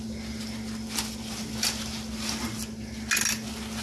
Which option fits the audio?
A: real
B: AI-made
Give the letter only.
A